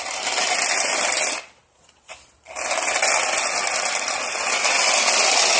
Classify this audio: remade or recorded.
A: recorded